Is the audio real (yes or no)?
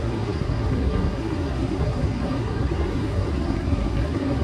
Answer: no